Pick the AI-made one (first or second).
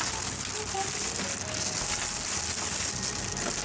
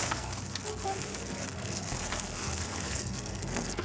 second